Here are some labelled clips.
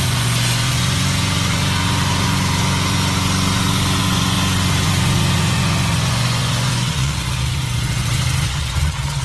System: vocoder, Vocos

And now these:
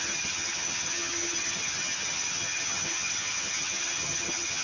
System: vocoder, HiFi-GAN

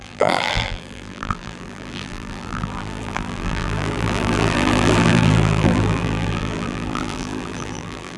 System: vocoder, BigVGAN v2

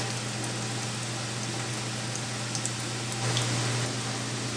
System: none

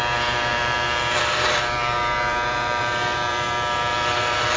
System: vocoder, BigVGAN v2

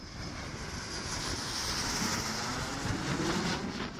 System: none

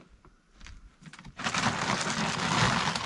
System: none